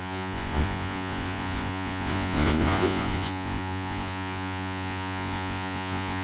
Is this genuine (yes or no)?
no